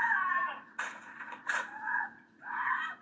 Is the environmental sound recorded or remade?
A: remade